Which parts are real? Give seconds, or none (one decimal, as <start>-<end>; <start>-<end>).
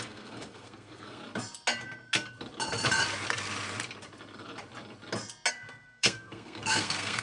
1.2-5.5